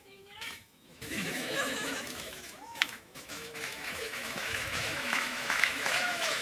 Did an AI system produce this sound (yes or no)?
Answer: yes